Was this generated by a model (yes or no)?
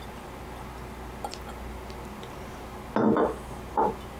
no